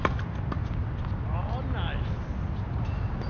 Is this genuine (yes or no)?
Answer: yes